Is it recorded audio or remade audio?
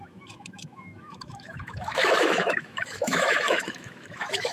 remade